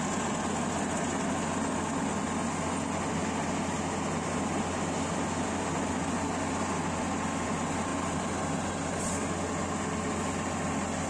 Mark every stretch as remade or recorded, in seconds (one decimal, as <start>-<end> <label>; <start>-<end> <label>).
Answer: 0.0-11.1 recorded